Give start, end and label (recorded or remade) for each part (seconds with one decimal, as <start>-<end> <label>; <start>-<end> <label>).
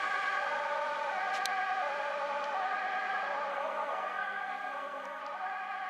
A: 0.0-3.5 recorded; 3.5-5.2 remade; 5.2-5.9 recorded